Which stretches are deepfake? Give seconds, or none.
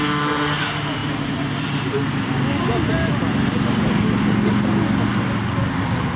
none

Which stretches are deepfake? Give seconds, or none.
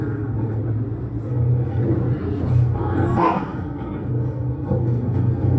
0.0-0.6; 1.3-1.8; 2.5-5.6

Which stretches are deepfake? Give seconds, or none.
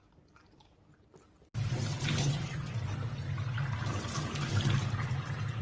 2.2-2.7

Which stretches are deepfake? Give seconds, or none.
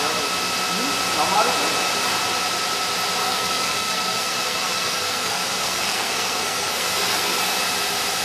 3.2-7.4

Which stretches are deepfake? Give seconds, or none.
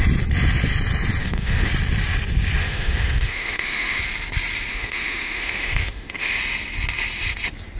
1.2-1.7; 2.6-4.0; 4.7-6.4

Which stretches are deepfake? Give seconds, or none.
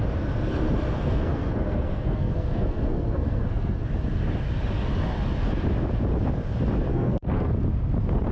0.9-3.8; 6.9-7.5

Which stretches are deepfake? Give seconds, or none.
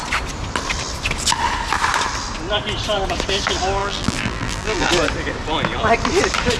3.8-4.9